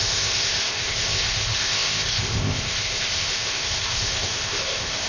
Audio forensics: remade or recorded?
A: remade